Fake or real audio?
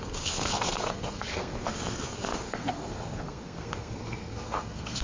fake